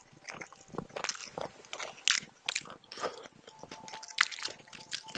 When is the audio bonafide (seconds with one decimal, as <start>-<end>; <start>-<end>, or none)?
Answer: 0.0-5.2